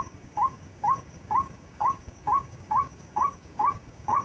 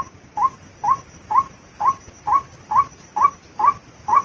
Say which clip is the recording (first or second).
second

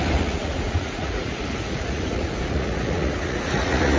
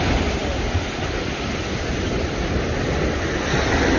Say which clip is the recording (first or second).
second